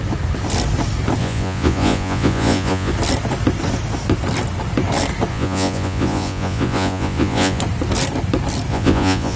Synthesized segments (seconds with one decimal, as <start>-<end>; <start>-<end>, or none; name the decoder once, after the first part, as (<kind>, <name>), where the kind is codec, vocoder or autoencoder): 1.2-2.9 (vocoder, Vocos); 5.3-7.6; 8.7-9.4